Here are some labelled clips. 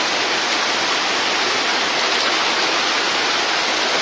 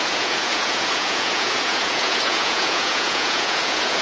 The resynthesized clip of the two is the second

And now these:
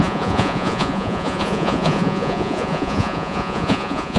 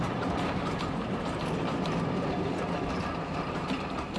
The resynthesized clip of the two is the first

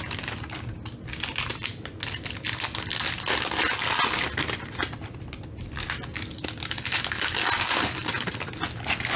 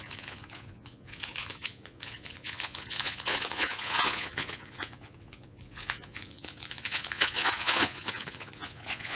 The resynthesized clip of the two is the second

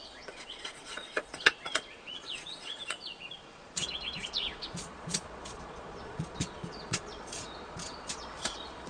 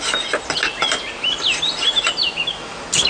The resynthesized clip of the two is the first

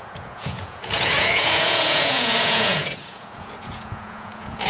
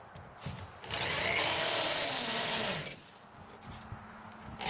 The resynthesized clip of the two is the first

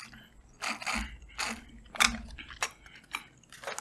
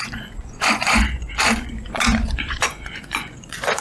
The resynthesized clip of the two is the second